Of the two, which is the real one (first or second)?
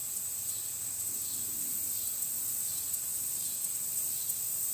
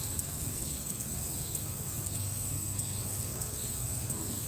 first